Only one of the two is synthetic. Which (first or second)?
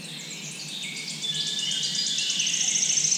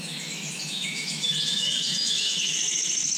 second